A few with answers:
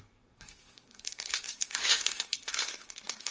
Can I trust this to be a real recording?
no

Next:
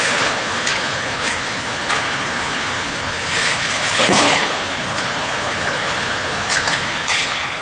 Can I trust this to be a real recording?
no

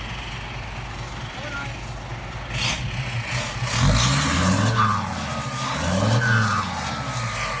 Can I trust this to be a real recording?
yes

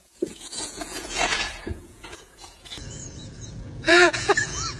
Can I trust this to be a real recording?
no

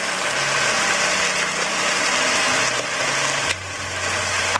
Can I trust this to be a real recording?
yes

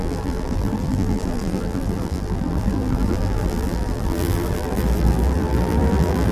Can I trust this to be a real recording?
no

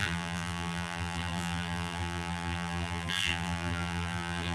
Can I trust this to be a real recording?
no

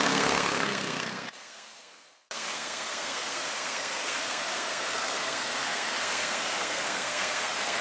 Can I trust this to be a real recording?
no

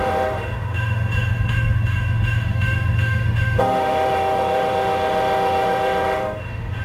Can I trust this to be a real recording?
no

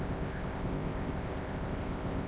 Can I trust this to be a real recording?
no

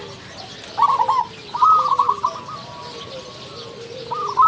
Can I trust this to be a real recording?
yes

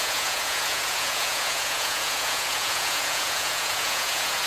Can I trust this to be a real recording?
no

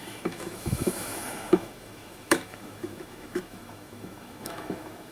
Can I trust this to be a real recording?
no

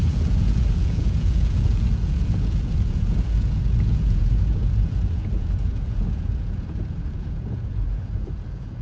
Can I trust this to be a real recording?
no